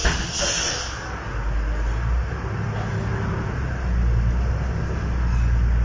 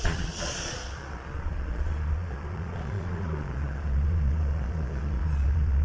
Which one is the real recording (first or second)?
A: first